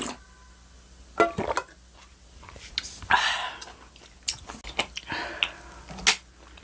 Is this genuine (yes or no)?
yes